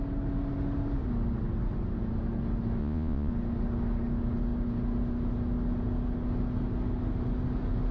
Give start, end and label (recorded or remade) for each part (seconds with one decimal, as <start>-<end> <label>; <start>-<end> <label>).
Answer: 0.0-2.8 recorded; 2.8-3.3 remade; 3.3-7.9 recorded